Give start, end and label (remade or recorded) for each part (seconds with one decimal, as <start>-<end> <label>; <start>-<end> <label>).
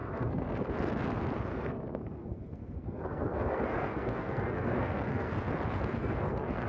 0.0-0.7 remade; 0.7-1.5 recorded; 1.5-5.4 remade; 5.4-6.0 recorded; 6.0-6.7 remade